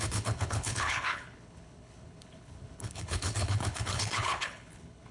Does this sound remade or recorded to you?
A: remade